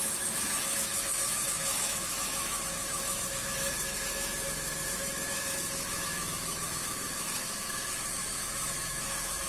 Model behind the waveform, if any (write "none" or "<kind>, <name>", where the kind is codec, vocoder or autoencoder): autoencoder, DAC-VAE